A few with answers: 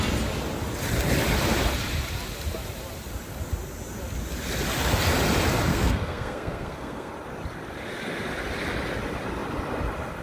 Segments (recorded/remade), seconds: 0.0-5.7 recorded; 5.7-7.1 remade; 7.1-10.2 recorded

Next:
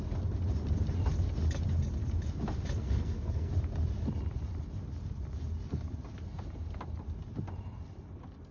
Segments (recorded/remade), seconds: 0.0-2.8 recorded; 2.8-3.5 remade; 3.5-8.5 recorded

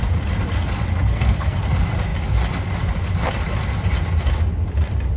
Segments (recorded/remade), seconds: 0.0-1.1 recorded; 1.1-1.6 remade; 1.6-5.2 recorded

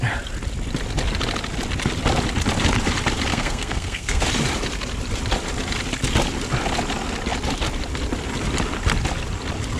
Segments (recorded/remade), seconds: 0.0-3.3 recorded; 3.3-4.2 remade; 4.2-9.8 recorded

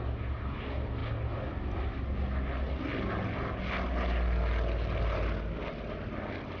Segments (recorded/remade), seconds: 0.0-6.6 recorded

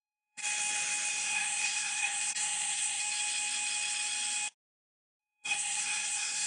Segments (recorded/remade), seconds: 0.0-0.4 remade; 0.4-1.1 recorded; 1.1-3.0 remade; 3.0-5.2 recorded; 5.2-6.5 remade